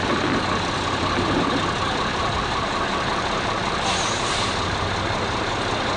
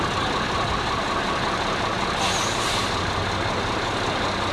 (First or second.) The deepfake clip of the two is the first